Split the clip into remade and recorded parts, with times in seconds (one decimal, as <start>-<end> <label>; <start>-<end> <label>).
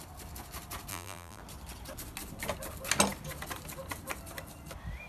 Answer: 0.0-0.9 recorded; 0.9-1.4 remade; 1.4-5.1 recorded